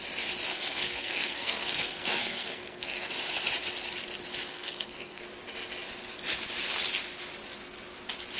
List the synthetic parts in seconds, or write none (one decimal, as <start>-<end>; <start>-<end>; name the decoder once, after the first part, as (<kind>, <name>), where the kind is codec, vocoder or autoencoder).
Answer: 0.5-3.1 (codec, SNAC); 4.5-5.2